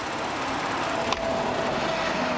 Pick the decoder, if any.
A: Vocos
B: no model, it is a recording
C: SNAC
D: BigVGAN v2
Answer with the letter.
B